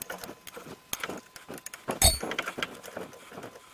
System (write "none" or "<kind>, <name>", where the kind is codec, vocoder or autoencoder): none